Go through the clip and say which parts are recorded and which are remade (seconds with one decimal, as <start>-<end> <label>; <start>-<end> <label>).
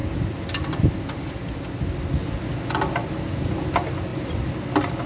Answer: 0.0-5.1 recorded